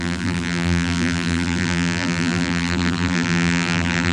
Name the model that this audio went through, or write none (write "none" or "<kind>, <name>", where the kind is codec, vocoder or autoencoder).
vocoder, BigVGAN v2